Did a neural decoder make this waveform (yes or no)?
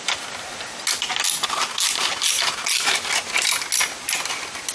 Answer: no